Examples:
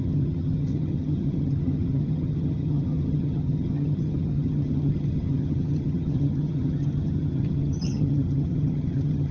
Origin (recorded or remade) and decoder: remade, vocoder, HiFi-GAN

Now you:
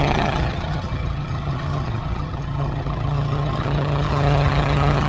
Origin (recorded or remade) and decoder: remade, vocoder, HiFi-GAN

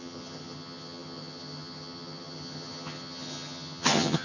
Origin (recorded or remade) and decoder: remade, vocoder, HiFi-GAN